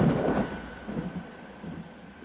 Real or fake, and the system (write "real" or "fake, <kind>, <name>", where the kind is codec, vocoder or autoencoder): real